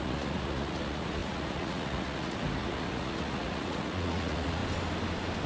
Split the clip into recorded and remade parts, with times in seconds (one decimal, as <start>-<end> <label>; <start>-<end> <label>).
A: 0.0-4.6 remade; 4.6-5.5 recorded